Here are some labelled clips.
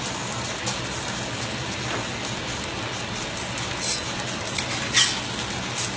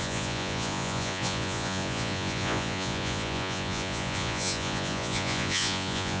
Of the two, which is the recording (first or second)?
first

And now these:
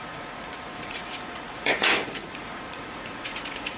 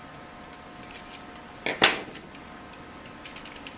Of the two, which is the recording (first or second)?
second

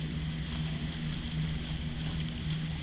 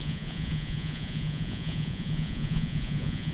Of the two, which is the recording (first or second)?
first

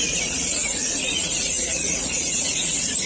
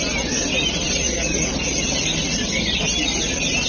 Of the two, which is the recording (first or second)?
second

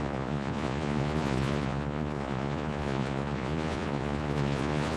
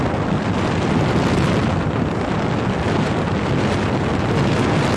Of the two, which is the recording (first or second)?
second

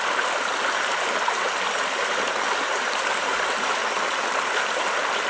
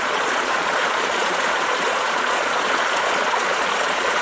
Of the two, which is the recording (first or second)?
first